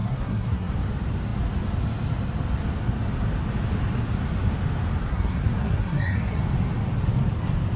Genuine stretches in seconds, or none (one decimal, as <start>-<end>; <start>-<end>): 0.7-5.1; 6.4-7.8